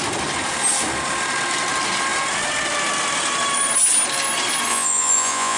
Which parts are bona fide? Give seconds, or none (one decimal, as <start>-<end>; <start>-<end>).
0.0-4.7